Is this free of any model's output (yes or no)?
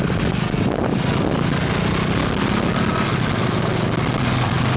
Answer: yes